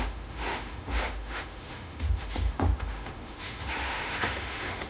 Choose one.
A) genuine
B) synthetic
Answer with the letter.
B